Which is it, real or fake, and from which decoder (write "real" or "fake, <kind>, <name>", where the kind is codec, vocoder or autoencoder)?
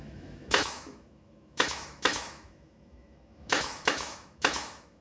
fake, autoencoder, DAC-VAE